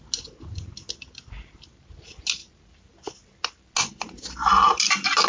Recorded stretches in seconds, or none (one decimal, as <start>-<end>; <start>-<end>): 0.0-5.3

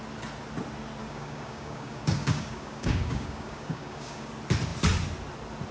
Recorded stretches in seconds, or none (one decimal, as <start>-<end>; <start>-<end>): 0.0-1.0; 4.3-5.7

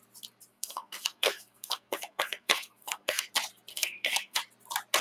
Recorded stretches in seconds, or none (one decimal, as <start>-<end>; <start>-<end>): 0.0-0.5; 3.3-3.7; 4.4-5.0

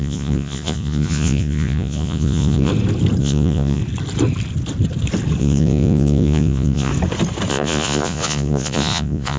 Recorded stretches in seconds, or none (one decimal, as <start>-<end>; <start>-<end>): 2.7-3.2; 3.8-5.4; 6.9-7.5

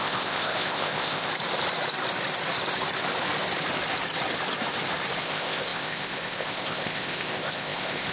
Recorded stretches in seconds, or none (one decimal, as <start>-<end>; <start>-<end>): 1.3-5.2

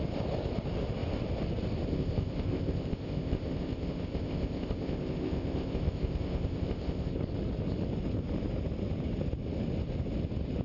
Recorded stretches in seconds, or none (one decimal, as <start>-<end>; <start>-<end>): 0.0-1.9; 7.1-10.6

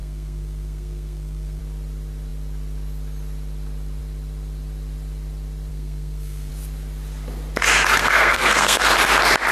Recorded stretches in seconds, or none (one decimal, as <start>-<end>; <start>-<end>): 1.6-5.7; 6.5-8.0; 8.8-9.5